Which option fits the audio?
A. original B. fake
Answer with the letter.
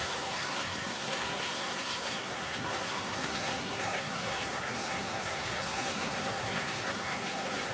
B